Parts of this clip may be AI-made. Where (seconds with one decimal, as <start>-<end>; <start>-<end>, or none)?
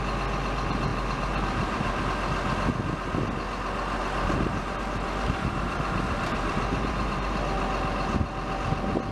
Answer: 0.9-2.0; 4.0-7.4